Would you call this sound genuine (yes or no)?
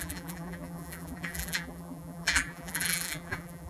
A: no